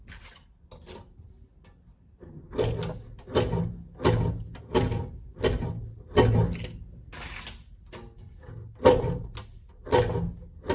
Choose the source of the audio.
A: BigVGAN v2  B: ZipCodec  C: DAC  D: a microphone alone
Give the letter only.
D